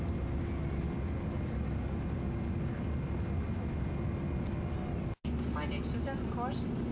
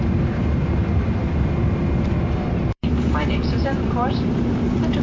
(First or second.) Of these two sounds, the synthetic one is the second